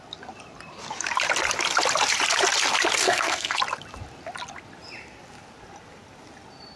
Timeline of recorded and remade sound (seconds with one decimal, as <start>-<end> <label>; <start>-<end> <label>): 0.0-3.0 recorded; 3.0-3.6 remade; 3.6-6.8 recorded